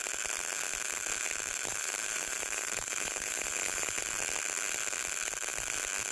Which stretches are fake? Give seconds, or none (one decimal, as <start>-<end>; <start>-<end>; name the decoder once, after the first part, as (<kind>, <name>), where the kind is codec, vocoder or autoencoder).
1.7-4.0 (vocoder, BigVGAN v2)

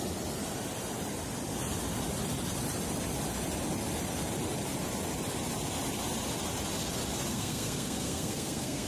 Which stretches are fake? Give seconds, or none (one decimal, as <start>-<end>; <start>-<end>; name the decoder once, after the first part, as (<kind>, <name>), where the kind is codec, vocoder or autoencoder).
7.3-8.9 (codec, SNAC)

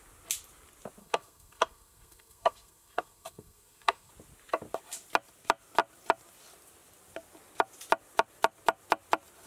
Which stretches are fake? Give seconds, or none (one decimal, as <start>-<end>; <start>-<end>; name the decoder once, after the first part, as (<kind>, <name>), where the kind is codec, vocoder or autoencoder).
1.0-4.1 (codec, SNAC)

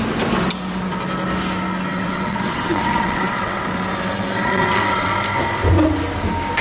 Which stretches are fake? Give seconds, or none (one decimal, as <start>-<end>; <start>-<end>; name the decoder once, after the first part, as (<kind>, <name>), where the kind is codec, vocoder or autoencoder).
1.9-3.6 (vocoder, WaveNeXt); 4.1-5.1

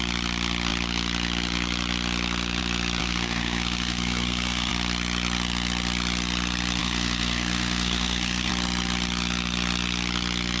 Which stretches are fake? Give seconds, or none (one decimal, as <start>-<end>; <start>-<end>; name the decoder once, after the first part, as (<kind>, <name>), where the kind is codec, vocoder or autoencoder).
3.0-4.7 (codec, SNAC); 6.8-8.5

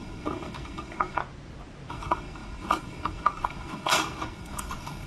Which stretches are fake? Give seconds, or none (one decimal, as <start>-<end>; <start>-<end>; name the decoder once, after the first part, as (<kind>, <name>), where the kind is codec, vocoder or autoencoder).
0.0-1.2 (codec, SNAC); 1.9-5.1

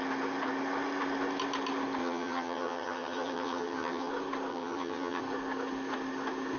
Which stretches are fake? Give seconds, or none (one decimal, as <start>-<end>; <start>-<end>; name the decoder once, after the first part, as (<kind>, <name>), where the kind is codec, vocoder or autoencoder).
2.0-4.1 (vocoder, HiFi-GAN); 4.5-5.2

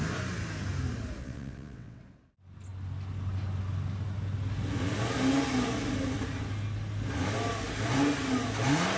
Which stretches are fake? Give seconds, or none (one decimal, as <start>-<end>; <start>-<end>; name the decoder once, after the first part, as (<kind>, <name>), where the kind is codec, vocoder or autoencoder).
1.2-2.0 (vocoder, WaveNeXt)